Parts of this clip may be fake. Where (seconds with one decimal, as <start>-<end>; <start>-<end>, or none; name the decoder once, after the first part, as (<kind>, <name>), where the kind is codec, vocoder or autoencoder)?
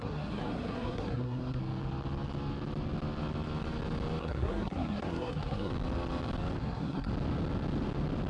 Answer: 0.0-1.6 (codec, SNAC); 4.2-5.7; 6.6-7.1